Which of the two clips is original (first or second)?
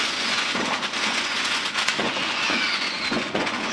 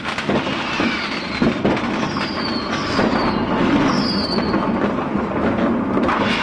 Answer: second